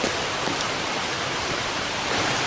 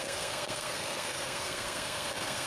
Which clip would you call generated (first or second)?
second